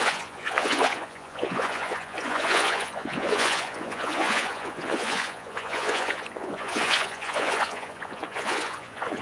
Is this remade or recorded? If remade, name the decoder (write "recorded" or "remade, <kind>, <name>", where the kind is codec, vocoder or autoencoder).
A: remade, vocoder, Vocos